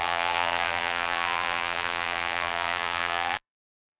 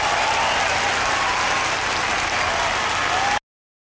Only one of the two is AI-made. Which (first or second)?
first